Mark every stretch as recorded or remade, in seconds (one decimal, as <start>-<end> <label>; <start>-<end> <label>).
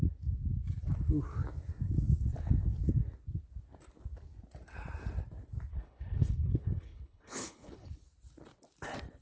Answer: 0.0-5.7 recorded; 5.7-7.9 remade; 7.9-9.2 recorded